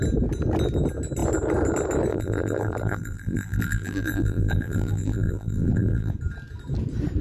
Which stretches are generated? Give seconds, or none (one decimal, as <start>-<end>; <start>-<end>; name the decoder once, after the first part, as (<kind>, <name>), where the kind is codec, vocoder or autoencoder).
2.1-6.1 (vocoder, BigVGAN v2)